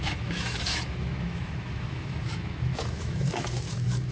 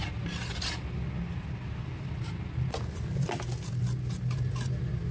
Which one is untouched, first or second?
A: second